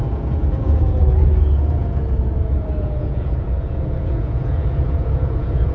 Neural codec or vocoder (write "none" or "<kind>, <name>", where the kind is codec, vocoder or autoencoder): vocoder, Vocos